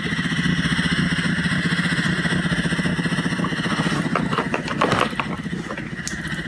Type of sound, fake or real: real